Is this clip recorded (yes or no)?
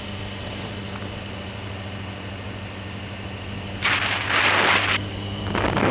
yes